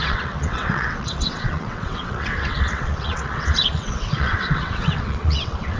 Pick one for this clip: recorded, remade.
remade